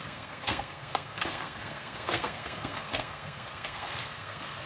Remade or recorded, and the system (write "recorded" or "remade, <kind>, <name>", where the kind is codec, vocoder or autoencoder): remade, codec, SNAC